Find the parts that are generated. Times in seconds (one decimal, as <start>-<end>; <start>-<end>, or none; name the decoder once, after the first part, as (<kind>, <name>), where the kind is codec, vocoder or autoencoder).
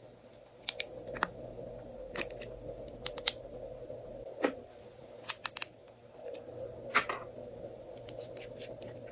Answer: none